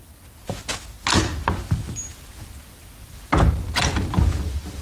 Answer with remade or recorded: recorded